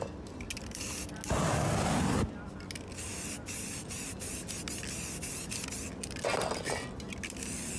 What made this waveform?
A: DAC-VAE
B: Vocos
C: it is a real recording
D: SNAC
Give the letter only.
C